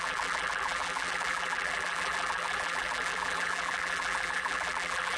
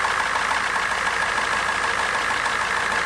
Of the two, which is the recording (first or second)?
second